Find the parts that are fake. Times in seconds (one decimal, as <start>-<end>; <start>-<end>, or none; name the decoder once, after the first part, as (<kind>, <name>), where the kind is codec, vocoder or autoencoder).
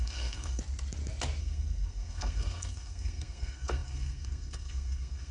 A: 0.0-0.6 (codec, SNAC); 1.4-5.3